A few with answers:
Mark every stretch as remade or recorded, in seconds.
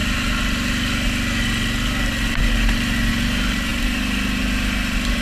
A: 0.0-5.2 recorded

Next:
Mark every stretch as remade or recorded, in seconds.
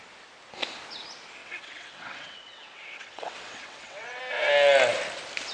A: 0.0-1.4 recorded; 1.4-4.2 remade; 4.2-5.5 recorded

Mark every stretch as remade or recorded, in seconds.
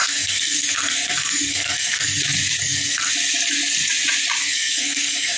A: 0.0-2.2 remade; 2.2-2.6 recorded; 2.6-3.1 remade; 3.1-4.4 recorded; 4.4-5.4 remade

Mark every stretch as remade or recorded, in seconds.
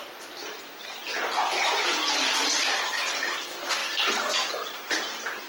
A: 0.0-5.5 recorded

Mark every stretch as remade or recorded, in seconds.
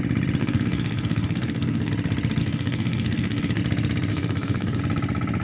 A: 0.0-0.4 recorded; 0.4-1.9 remade; 1.9-2.4 recorded; 2.4-3.6 remade; 3.6-4.1 recorded; 4.1-4.8 remade; 4.8-5.4 recorded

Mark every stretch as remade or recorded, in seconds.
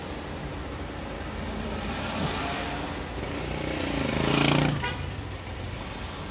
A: 0.0-6.3 recorded